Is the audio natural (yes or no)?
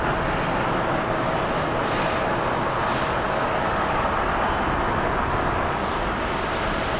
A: yes